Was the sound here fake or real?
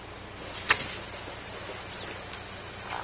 real